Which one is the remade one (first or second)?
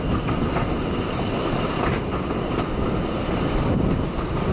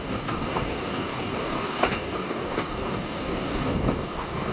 second